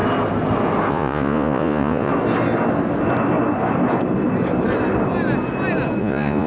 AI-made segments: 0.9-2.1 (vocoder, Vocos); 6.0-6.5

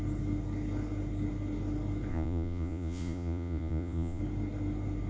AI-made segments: 2.1-4.2 (vocoder, Vocos)